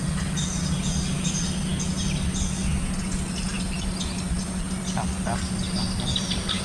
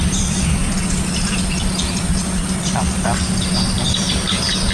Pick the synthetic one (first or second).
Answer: second